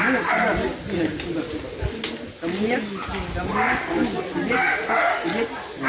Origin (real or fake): real